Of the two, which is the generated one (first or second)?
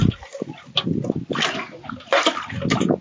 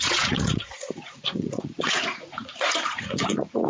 second